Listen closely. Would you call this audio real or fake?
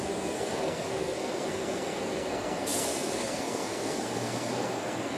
fake